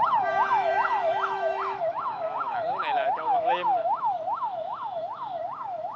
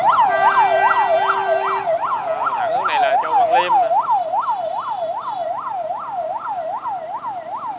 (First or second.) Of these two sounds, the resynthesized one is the first